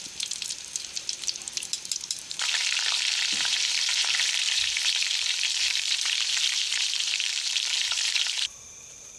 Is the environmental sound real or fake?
fake